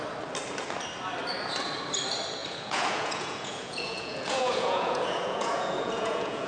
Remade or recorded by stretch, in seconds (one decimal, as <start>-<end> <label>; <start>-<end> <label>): 0.0-2.4 recorded; 2.4-6.5 remade